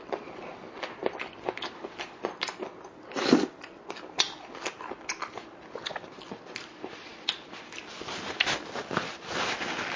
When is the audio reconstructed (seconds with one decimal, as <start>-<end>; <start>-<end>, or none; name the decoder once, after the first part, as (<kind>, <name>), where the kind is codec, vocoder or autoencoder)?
none